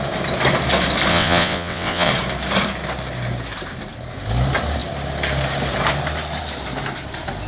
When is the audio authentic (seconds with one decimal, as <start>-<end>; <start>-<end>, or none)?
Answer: 0.0-1.1; 2.1-7.5